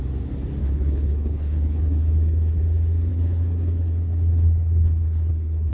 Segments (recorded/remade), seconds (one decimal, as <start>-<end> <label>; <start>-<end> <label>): 0.0-0.6 recorded; 0.6-2.6 remade; 2.6-3.1 recorded; 3.1-5.7 remade